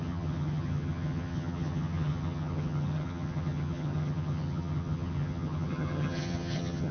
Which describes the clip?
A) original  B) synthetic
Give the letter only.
B